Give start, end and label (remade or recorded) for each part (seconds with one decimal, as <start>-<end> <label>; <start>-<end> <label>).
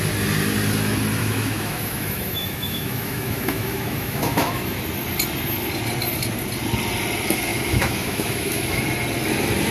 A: 0.0-1.2 recorded; 1.2-4.8 remade; 4.8-7.5 recorded; 7.5-8.8 remade; 8.8-9.7 recorded